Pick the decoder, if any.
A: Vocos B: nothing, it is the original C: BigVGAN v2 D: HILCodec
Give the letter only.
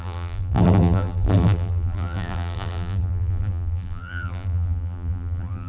C